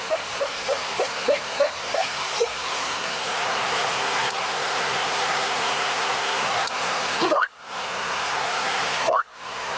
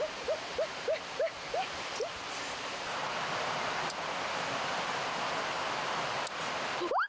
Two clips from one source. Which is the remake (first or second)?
first